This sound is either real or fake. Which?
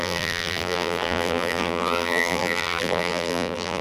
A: fake